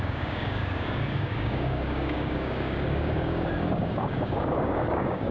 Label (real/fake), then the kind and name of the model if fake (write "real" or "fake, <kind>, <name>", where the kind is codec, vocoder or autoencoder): fake, codec, DAC